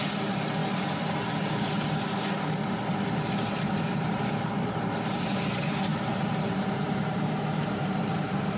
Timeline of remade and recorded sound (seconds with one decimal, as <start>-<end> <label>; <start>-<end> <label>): 0.0-0.6 remade; 0.6-4.0 recorded; 4.0-8.6 remade

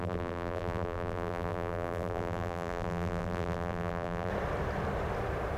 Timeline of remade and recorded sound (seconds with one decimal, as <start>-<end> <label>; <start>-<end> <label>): 0.0-4.3 remade; 4.3-5.6 recorded

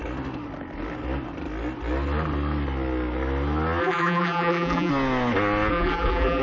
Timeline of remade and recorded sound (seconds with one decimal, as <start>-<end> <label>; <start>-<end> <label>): 0.0-3.8 recorded; 3.8-4.9 remade; 4.9-5.7 recorded; 5.7-6.4 remade

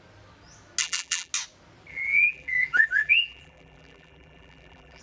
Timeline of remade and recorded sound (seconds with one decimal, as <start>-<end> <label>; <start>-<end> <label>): 0.0-0.8 recorded; 0.8-1.3 remade; 1.3-1.9 recorded; 1.9-5.0 remade

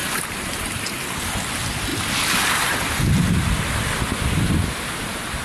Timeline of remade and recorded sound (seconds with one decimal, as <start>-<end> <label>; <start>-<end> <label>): 0.0-1.0 remade; 1.0-5.4 recorded

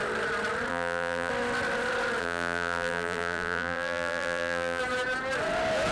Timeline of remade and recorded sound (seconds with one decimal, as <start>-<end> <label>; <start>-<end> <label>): 0.0-0.7 recorded; 0.7-1.3 remade; 1.3-2.2 recorded; 2.2-4.8 remade; 4.8-5.9 recorded

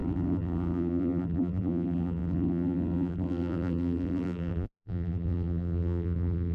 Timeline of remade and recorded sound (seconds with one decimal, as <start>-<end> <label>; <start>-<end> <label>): 0.0-6.5 remade